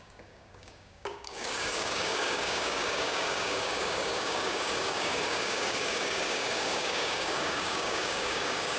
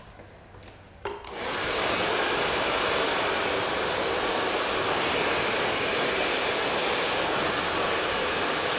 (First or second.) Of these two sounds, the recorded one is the second